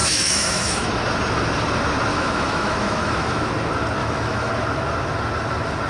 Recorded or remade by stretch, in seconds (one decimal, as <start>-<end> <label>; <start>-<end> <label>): 0.0-0.9 remade; 0.9-2.1 recorded; 2.1-3.5 remade; 3.5-4.0 recorded; 4.0-4.5 remade; 4.5-5.9 recorded